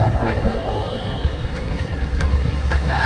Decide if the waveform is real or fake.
fake